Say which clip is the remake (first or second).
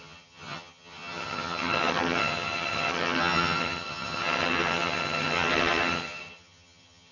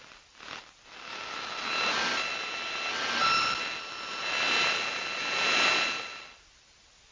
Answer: first